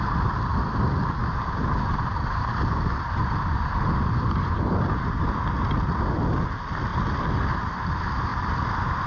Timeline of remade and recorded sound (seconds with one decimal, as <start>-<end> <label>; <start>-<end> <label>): 0.0-1.2 recorded; 1.2-4.7 remade; 4.7-9.1 recorded